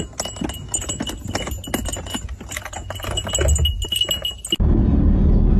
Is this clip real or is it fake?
real